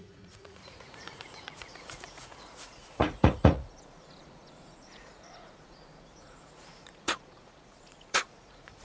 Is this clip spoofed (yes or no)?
yes